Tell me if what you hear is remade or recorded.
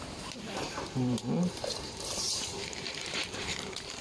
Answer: remade